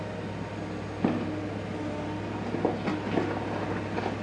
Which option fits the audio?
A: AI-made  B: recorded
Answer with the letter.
B